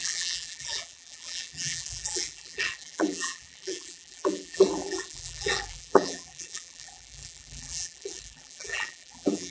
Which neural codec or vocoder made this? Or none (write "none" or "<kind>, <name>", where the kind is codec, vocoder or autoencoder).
vocoder, BigVGAN v2